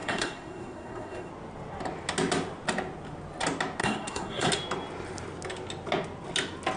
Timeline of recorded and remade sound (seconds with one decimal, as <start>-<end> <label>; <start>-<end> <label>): 0.0-1.3 remade; 1.3-3.8 recorded; 3.8-4.5 remade; 4.5-6.8 recorded